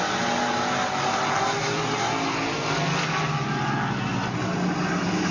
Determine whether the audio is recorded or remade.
recorded